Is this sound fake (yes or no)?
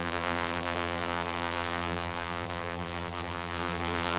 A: yes